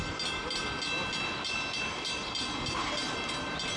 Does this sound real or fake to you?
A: real